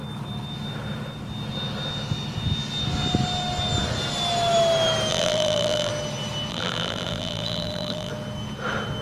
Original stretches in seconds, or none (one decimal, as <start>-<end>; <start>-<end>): 0.0-5.1; 5.9-6.5; 8.1-9.0